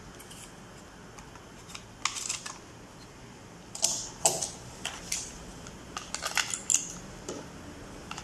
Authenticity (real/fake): real